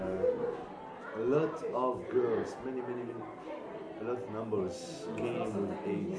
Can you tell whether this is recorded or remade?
recorded